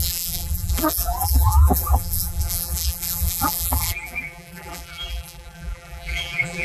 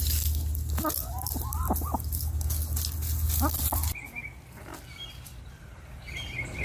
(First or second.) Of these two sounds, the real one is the second